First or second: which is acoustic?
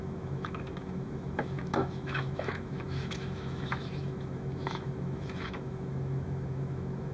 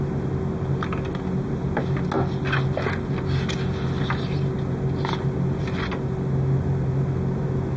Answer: second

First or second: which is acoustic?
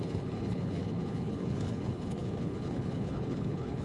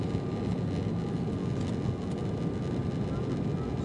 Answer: second